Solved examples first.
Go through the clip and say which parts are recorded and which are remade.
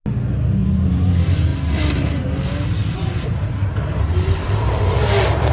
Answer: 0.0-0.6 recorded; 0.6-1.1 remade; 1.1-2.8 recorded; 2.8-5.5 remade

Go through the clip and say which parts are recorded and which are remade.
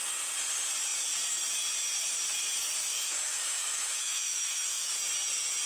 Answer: 0.0-2.9 recorded; 2.9-4.9 remade; 4.9-5.7 recorded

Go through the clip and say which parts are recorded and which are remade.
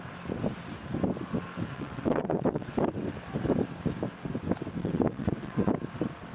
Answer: 0.0-1.7 recorded; 1.7-2.7 remade; 2.7-4.8 recorded; 4.8-5.7 remade; 5.7-6.3 recorded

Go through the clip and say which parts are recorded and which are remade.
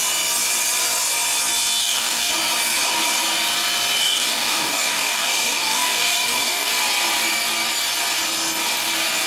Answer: 0.0-1.8 recorded; 1.8-2.3 remade; 2.3-4.0 recorded; 4.0-6.7 remade; 6.7-9.3 recorded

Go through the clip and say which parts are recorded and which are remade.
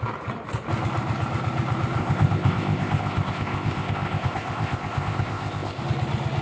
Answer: 0.0-2.0 recorded; 2.0-5.8 remade; 5.8-6.4 recorded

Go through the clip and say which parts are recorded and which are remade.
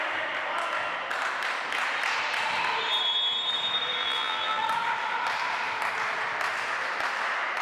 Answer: 0.0-4.0 recorded; 4.0-4.6 remade; 4.6-7.6 recorded